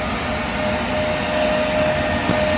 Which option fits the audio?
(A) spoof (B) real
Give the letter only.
B